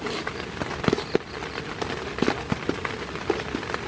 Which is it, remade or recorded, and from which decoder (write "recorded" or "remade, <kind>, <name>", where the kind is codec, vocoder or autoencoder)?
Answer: recorded